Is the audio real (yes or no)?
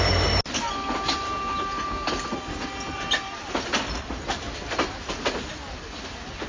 yes